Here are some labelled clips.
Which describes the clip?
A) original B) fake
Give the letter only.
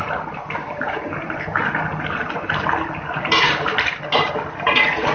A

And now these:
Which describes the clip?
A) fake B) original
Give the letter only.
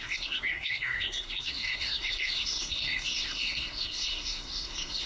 A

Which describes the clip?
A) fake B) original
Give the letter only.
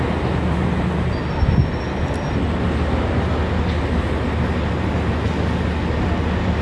B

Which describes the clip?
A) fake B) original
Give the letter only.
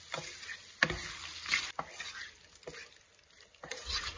B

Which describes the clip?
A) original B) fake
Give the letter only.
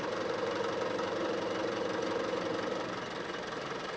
B